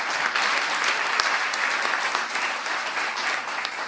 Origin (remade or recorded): recorded